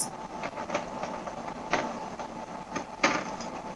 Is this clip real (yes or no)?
yes